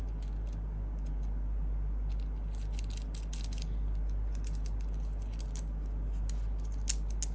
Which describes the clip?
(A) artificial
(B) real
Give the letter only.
B